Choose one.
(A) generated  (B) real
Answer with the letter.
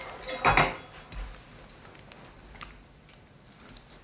B